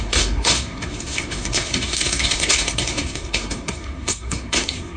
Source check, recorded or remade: remade